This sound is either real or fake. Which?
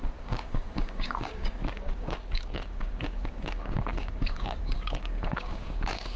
fake